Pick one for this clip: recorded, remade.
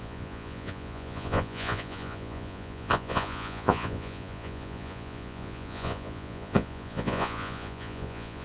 remade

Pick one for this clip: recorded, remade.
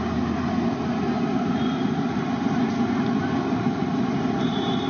recorded